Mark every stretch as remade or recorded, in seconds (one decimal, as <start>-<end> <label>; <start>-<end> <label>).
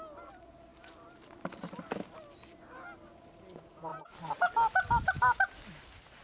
0.0-6.2 recorded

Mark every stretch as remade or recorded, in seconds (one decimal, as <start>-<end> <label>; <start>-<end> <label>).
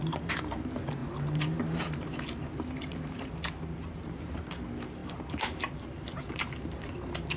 0.0-7.4 remade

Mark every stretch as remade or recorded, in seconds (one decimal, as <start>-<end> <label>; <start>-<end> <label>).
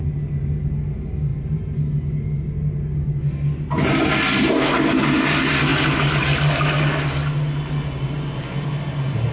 0.0-1.3 recorded; 1.3-2.1 remade; 2.1-9.3 recorded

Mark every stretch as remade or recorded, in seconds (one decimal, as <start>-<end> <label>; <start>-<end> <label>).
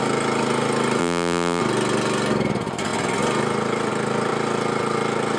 0.0-1.0 recorded; 1.0-1.6 remade; 1.6-5.4 recorded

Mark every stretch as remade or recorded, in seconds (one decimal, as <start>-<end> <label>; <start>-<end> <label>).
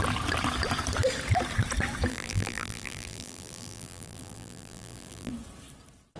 0.0-2.1 recorded; 2.1-5.3 remade; 5.3-6.2 recorded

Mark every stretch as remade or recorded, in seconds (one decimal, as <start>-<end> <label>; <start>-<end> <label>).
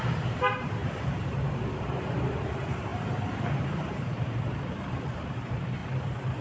0.0-0.8 remade; 0.8-1.7 recorded; 1.7-2.9 remade; 2.9-3.6 recorded; 3.6-6.4 remade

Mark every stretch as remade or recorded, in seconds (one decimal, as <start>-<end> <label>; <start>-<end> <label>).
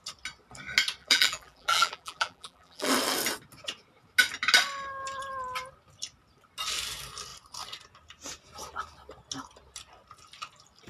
0.0-1.0 recorded; 1.0-2.9 remade; 2.9-10.9 recorded